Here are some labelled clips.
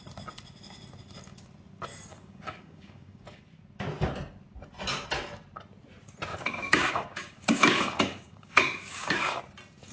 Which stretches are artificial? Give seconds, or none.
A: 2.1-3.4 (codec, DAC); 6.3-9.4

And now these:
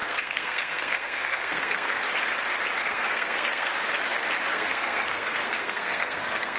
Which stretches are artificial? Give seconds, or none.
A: 0.0-2.0 (codec, SNAC); 2.8-3.7; 4.5-6.6

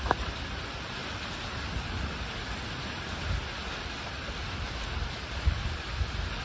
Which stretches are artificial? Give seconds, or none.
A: none

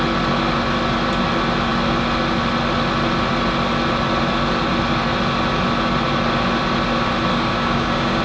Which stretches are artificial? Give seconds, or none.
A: 7.3-8.2 (codec, DAC)

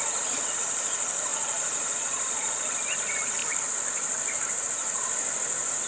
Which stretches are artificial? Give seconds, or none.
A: 1.3-2.6 (vocoder, Vocos)

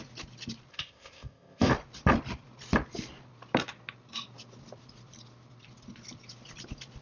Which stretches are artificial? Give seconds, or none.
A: 0.7-1.7 (codec, ZipCodec)

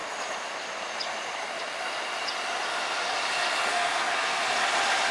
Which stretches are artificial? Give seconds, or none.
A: 3.7-4.4 (codec, SNAC)